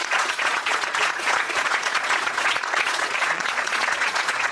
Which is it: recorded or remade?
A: remade